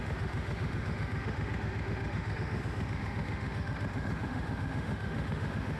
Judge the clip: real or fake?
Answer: fake